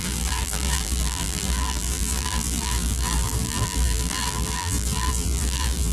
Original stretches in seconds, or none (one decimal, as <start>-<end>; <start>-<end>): none